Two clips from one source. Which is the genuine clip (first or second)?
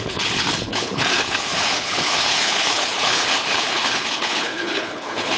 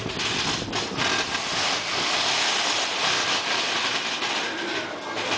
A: second